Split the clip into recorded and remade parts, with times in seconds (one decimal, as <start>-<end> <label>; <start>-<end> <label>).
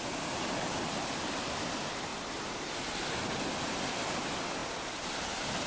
0.0-4.6 recorded; 4.6-5.7 remade